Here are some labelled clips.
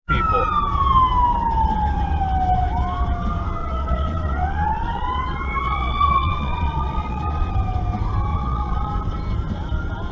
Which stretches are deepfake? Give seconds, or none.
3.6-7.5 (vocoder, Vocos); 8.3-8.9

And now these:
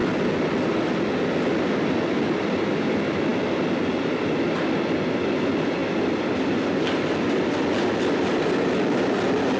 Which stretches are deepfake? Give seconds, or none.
none